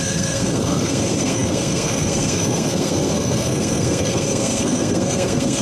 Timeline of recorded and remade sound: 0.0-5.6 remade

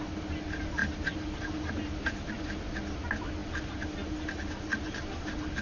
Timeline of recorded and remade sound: 0.0-5.6 recorded